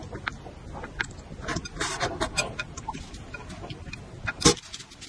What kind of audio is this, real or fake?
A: real